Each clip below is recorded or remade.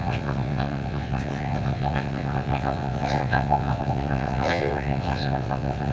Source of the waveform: remade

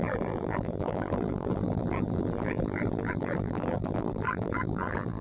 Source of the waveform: remade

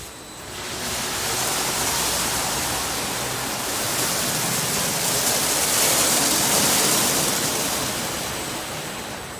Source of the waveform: recorded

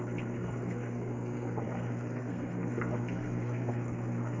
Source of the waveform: remade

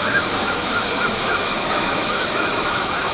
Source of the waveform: remade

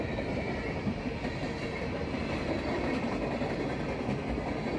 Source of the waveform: recorded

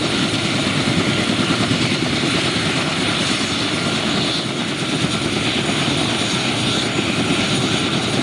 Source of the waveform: recorded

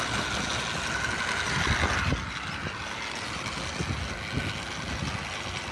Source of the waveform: recorded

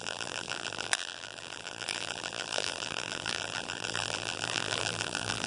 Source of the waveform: remade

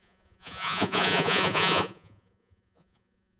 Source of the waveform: remade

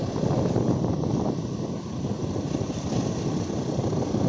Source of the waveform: remade